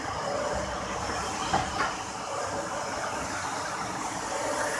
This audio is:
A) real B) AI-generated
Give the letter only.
A